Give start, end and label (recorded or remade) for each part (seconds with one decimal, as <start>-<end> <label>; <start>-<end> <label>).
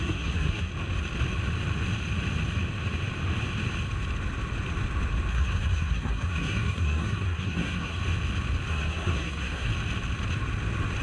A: 0.0-0.7 remade; 0.7-5.3 recorded; 5.3-8.0 remade; 8.0-8.7 recorded; 8.7-9.7 remade; 9.7-11.0 recorded